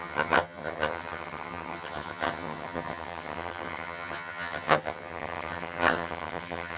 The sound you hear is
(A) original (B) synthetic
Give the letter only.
B